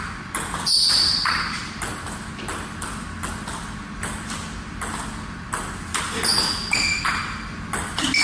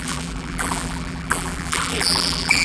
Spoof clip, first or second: second